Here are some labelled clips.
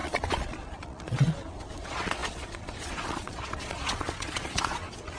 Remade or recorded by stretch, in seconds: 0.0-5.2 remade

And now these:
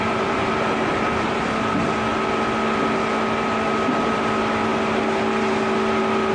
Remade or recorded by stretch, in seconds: 0.0-6.3 recorded

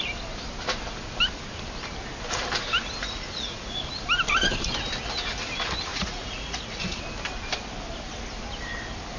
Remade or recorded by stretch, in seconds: 0.0-3.0 recorded; 3.0-3.9 remade; 3.9-5.9 recorded; 5.9-7.0 remade; 7.0-9.2 recorded

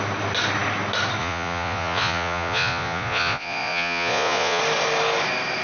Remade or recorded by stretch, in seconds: 0.0-1.2 recorded; 1.2-4.6 remade; 4.6-5.6 recorded

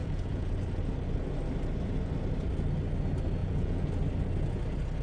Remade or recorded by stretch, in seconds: 0.0-0.5 remade; 0.5-3.4 recorded; 3.4-3.9 remade; 3.9-5.0 recorded

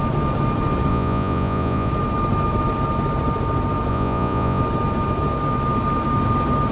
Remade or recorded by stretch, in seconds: 0.0-0.9 recorded; 0.9-1.9 remade; 1.9-3.9 recorded; 3.9-4.6 remade; 4.6-6.7 recorded

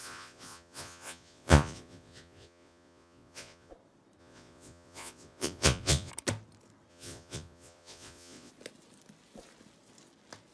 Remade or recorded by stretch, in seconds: 0.0-3.7 remade; 3.7-4.2 recorded; 4.2-6.1 remade; 6.1-6.9 recorded; 6.9-8.5 remade; 8.5-10.5 recorded

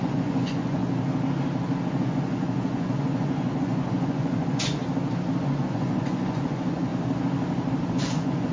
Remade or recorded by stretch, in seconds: 0.0-0.8 remade; 0.8-1.9 recorded; 1.9-4.8 remade; 4.8-5.4 recorded; 5.4-6.9 remade; 6.9-7.9 recorded; 7.9-8.5 remade